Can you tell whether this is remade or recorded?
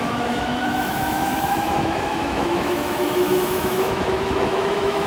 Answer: remade